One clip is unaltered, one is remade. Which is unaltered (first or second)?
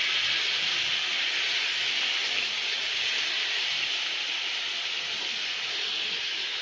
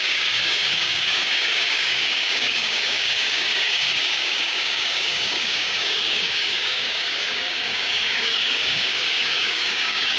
first